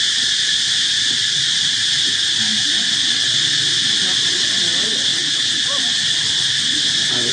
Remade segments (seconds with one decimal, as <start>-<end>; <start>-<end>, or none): none